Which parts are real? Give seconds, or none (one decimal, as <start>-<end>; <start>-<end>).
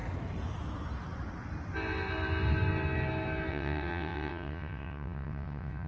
0.0-3.5